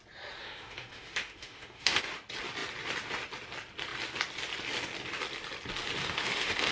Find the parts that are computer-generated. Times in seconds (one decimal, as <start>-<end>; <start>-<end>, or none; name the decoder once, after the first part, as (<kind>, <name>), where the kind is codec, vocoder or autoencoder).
0.4-2.0 (autoencoder, DAC-VAE); 6.0-6.7